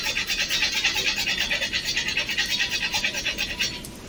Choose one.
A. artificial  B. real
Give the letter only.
B